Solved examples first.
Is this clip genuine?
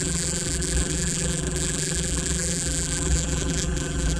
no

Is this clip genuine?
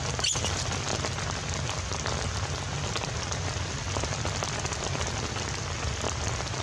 yes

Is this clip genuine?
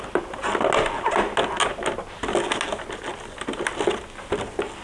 yes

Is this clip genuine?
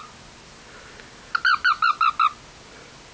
yes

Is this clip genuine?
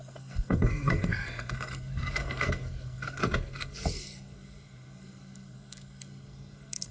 no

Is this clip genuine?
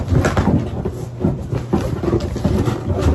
yes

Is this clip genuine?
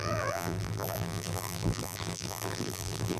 no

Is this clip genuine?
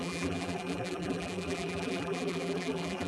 no